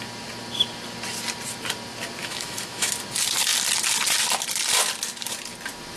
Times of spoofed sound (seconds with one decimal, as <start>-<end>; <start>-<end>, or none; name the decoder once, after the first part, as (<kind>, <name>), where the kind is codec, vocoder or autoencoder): 2.2-2.9 (autoencoder, DAC-VAE)